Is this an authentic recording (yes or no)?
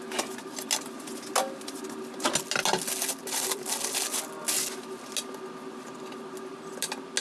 yes